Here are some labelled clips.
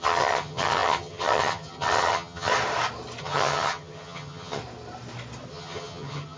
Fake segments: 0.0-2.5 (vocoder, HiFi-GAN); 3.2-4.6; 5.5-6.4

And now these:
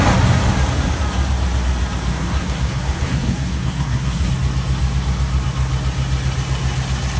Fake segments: 2.1-4.3 (codec, SNAC)

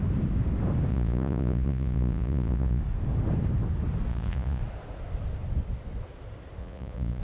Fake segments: 0.9-2.8 (vocoder, Vocos); 4.1-4.6; 6.6-7.2

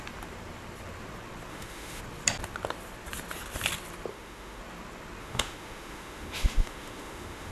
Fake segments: 1.5-2.0 (autoencoder, DAC-VAE); 4.1-4.6; 5.2-7.5

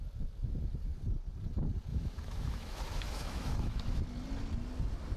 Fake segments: 1.9-4.0 (autoencoder, DAC-VAE)